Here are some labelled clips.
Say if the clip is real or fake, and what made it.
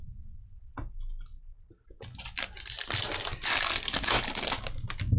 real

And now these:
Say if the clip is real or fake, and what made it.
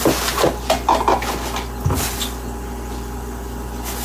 real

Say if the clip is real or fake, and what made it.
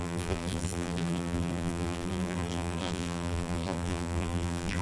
fake, vocoder, BigVGAN v2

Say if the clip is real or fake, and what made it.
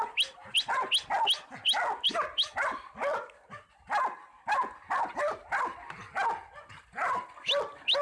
real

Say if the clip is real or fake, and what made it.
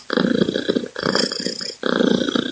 real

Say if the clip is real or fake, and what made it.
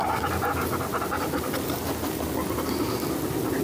real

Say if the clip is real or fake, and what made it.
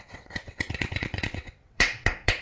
fake, vocoder, WaveNeXt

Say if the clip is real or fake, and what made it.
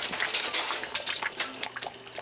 real